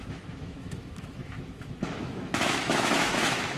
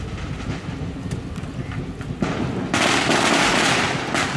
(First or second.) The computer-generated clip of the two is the first